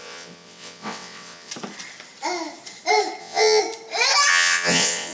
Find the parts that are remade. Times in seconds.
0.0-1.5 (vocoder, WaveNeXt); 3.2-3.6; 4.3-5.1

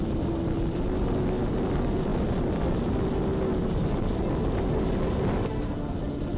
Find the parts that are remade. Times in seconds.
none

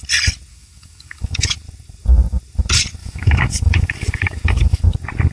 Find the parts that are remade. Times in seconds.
0.5-1.6 (autoencoder, DAC-VAE); 3.0-4.8

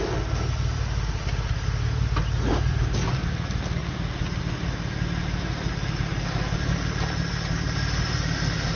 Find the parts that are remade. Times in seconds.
none